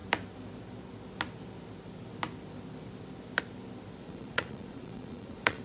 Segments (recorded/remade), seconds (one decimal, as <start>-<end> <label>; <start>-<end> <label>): 0.0-4.0 recorded; 4.0-5.6 remade